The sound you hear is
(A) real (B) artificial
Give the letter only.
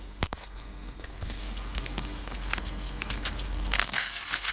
B